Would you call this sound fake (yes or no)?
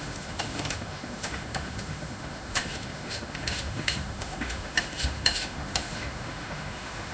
yes